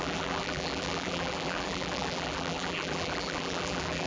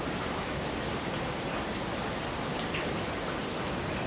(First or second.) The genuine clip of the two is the second